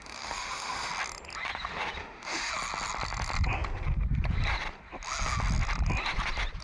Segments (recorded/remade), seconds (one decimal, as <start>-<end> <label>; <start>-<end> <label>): 0.0-0.9 remade; 0.9-2.0 recorded; 2.0-2.5 remade; 2.5-6.6 recorded